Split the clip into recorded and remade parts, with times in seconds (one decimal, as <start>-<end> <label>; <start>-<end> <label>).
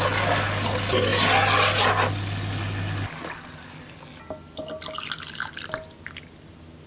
0.0-6.9 recorded